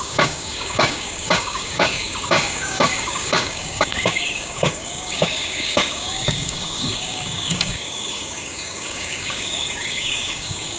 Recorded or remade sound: remade